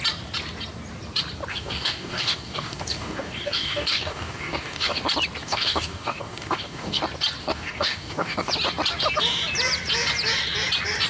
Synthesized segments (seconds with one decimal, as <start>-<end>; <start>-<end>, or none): 1.5-5.0; 5.4-7.0; 7.4-8.5